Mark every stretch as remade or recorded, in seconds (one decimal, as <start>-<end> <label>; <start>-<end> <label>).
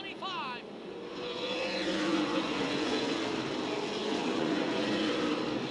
0.0-1.1 recorded; 1.1-3.2 remade; 3.2-4.0 recorded; 4.0-5.1 remade; 5.1-5.7 recorded